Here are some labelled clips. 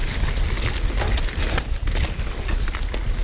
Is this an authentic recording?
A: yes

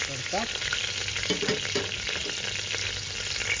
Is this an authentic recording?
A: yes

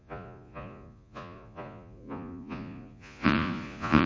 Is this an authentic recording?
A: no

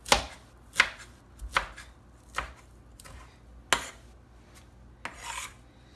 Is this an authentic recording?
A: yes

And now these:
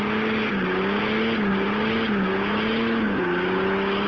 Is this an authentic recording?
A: yes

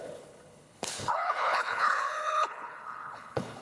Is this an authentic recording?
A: no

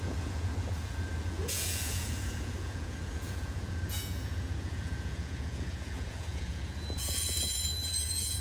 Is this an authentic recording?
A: no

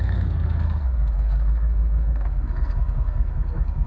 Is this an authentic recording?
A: no